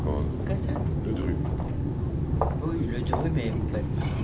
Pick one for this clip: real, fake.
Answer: real